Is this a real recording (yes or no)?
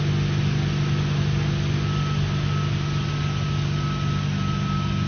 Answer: yes